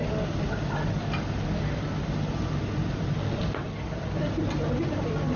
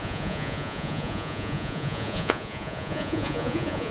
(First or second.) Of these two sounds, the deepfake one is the second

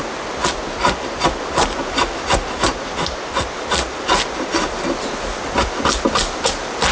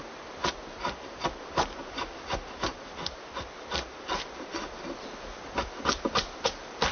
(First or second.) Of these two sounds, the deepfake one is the second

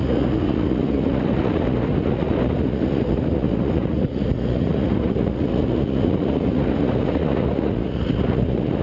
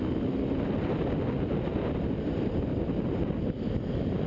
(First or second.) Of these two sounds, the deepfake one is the first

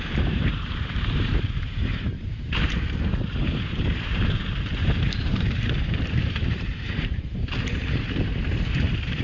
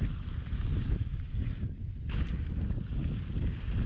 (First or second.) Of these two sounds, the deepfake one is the first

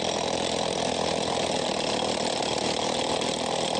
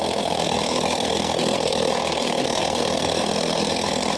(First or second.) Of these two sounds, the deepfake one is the second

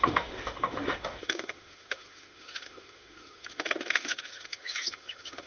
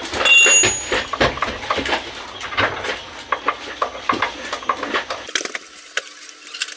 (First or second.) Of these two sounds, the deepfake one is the first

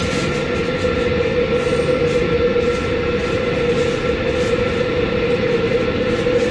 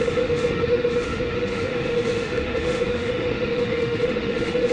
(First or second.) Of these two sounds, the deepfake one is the second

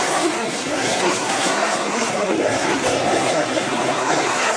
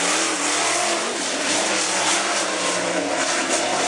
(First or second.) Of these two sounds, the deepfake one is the first